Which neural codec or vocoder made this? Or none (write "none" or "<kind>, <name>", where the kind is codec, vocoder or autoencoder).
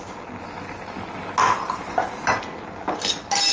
none